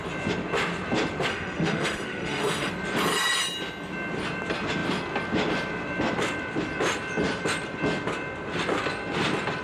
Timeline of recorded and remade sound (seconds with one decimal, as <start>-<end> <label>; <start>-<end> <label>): 0.0-1.3 recorded; 1.3-2.7 remade; 2.7-9.6 recorded